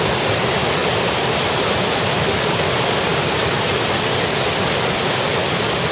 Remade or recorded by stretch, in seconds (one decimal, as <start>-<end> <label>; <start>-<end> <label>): 0.0-0.8 recorded; 0.8-1.9 remade; 1.9-3.1 recorded; 3.1-3.7 remade; 3.7-5.9 recorded